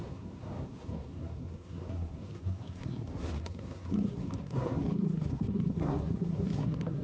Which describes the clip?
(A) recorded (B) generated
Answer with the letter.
B